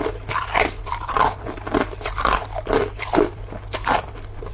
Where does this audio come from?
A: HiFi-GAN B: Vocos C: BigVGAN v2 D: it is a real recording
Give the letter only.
C